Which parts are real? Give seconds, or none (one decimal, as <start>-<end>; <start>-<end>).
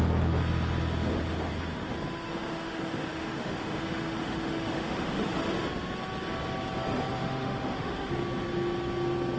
0.0-2.3; 5.5-7.1; 8.1-9.4